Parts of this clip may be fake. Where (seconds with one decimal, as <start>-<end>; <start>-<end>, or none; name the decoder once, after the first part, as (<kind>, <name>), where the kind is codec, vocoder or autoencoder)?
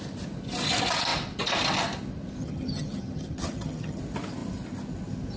2.4-4.0 (vocoder, HiFi-GAN)